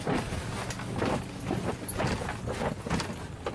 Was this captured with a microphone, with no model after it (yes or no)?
yes